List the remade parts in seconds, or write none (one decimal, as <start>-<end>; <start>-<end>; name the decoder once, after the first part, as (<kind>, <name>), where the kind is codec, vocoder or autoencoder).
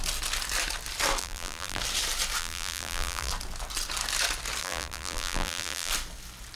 1.2-1.8 (vocoder, BigVGAN v2); 2.4-3.3; 4.6-5.9